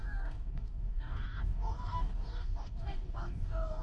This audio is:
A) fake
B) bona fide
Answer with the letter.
A